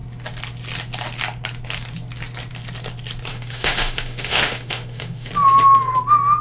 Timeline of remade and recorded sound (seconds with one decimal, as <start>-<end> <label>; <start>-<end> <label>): 0.0-3.3 recorded; 3.3-5.3 remade; 5.3-6.4 recorded